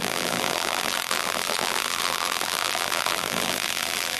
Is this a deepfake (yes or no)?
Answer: yes